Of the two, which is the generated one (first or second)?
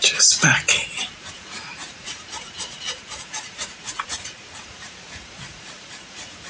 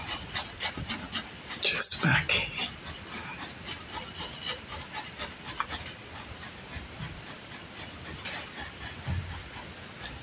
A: first